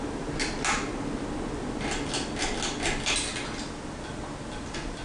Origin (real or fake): real